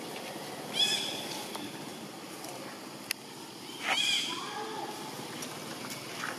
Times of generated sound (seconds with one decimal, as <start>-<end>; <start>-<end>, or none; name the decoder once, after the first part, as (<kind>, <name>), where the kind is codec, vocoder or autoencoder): none